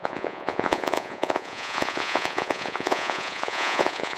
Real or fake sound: fake